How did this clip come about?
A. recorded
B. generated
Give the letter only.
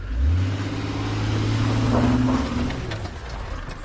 A